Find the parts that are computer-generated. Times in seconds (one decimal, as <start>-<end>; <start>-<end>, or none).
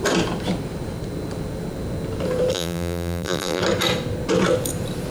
2.5-3.6